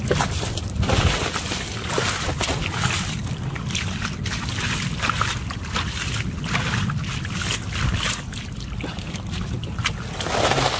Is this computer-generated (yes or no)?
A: no